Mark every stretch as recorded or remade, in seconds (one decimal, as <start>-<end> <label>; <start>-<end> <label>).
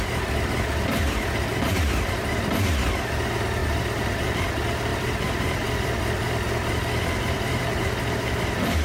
0.0-1.5 recorded; 1.5-2.3 remade; 2.3-3.6 recorded; 3.6-4.3 remade; 4.3-4.9 recorded; 4.9-7.6 remade; 7.6-8.8 recorded